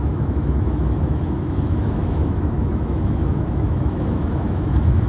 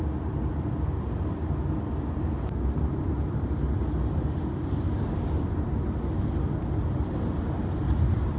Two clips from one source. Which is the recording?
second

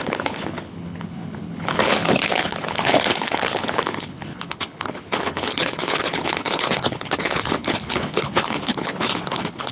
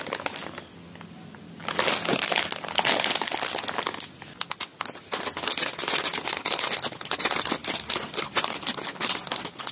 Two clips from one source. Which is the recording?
second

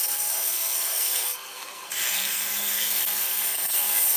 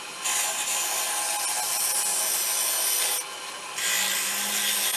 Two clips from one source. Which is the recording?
second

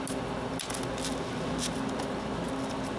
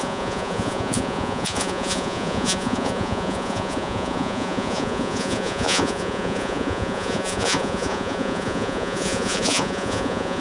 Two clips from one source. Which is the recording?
first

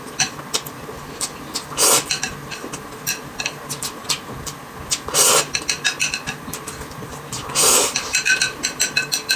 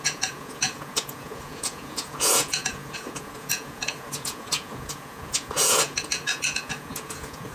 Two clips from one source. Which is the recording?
first